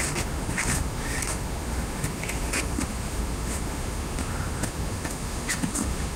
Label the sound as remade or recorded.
remade